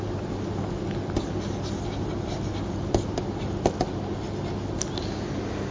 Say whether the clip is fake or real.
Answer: real